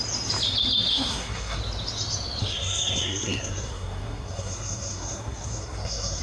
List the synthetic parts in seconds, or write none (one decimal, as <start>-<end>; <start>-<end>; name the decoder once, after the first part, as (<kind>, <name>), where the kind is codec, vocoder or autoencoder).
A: 0.9-1.6 (codec, SNAC); 2.4-6.2